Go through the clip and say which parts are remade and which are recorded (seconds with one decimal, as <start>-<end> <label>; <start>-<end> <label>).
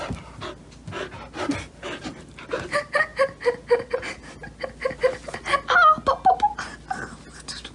0.0-7.7 recorded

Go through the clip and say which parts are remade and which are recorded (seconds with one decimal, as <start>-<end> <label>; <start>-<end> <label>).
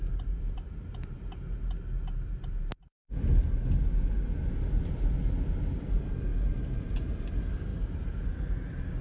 0.0-6.3 recorded; 6.3-7.1 remade; 7.1-7.7 recorded; 7.7-8.2 remade; 8.2-9.0 recorded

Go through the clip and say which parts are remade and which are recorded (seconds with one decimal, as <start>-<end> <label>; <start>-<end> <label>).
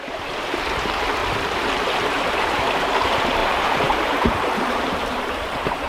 0.0-1.2 remade; 1.2-2.9 recorded; 2.9-5.9 remade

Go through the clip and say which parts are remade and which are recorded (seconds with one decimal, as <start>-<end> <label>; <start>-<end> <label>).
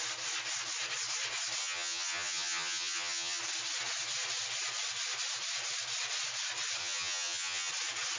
0.0-1.6 recorded; 1.6-3.4 remade; 3.4-6.8 recorded; 6.8-7.7 remade; 7.7-8.2 recorded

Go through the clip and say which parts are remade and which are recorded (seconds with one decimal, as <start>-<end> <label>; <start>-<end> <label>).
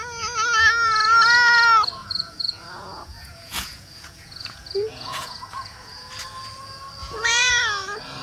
0.0-2.0 recorded; 2.0-6.1 remade; 6.1-7.0 recorded; 7.0-7.5 remade; 7.5-8.2 recorded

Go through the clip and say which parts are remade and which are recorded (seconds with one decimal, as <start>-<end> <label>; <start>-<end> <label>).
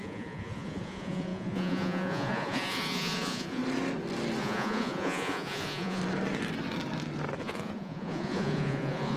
0.0-3.6 remade; 3.6-4.4 recorded; 4.4-6.0 remade; 6.0-7.4 recorded; 7.4-9.2 remade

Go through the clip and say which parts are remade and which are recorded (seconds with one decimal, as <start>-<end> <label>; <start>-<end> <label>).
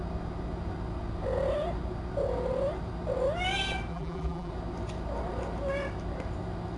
0.0-3.9 recorded; 3.9-4.5 remade; 4.5-6.8 recorded